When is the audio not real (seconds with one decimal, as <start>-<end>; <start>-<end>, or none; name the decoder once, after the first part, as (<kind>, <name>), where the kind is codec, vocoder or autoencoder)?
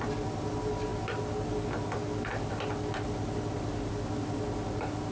none